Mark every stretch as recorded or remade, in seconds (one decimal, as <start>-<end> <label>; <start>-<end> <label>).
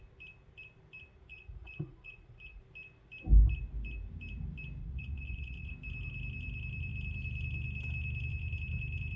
0.0-1.3 recorded; 1.3-2.6 remade; 2.6-4.8 recorded; 4.8-5.7 remade; 5.7-9.2 recorded